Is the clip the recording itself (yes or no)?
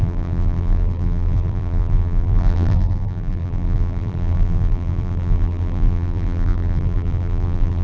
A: no